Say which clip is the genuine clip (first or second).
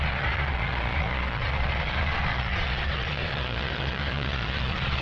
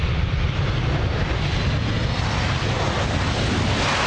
second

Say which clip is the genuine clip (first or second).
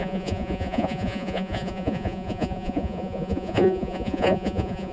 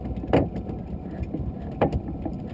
second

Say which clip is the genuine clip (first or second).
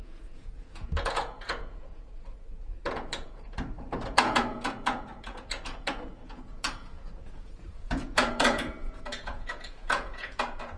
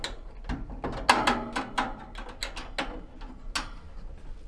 second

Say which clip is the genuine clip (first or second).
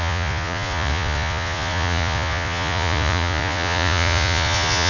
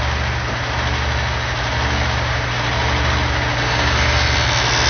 second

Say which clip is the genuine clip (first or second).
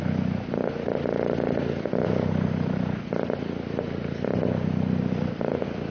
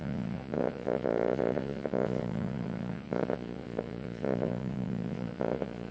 first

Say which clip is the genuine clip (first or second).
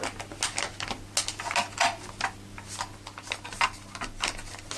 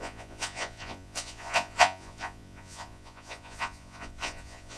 first